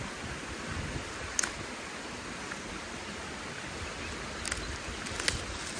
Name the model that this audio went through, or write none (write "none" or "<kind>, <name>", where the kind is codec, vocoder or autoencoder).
none